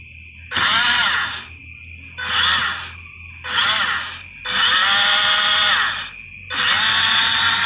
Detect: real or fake real